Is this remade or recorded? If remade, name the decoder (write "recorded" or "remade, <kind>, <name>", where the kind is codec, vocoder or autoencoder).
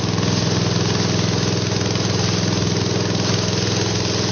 recorded